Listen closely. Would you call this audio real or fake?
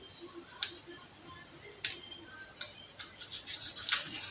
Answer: real